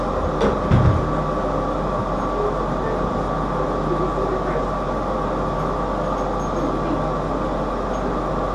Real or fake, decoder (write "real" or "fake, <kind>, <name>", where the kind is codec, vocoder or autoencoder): real